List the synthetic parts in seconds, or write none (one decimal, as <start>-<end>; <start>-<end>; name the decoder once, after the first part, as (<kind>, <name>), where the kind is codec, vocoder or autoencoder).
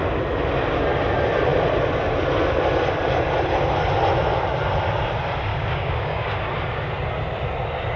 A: 5.5-6.5 (codec, DAC)